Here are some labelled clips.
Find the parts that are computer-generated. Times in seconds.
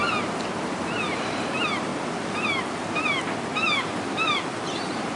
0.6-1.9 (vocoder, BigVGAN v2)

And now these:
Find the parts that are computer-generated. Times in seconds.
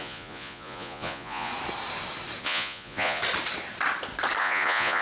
0.0-1.5 (vocoder, Vocos); 2.4-3.2; 4.4-5.0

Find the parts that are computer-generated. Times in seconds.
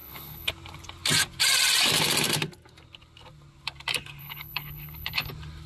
0.0-0.5 (codec, HILCodec); 4.2-5.3